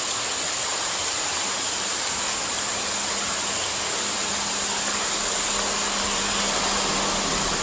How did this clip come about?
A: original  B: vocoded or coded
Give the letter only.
A